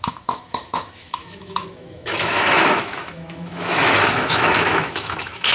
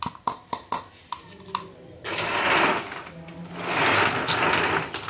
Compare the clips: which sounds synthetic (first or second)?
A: first